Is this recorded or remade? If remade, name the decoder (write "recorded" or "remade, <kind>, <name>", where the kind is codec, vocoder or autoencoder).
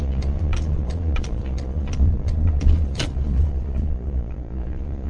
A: remade, vocoder, Vocos